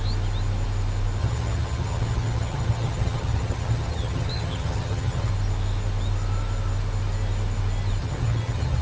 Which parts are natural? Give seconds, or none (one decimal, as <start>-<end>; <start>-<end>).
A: 0.0-1.2; 5.3-8.0